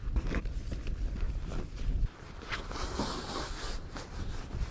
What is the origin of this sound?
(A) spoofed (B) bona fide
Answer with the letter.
B